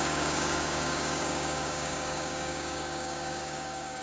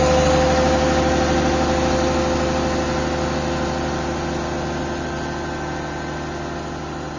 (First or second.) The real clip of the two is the second